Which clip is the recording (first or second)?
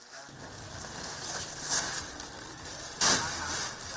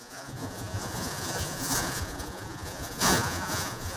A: first